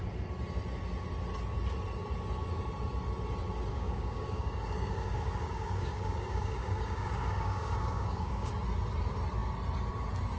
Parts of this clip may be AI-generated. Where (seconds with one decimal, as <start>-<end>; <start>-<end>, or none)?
3.7-8.5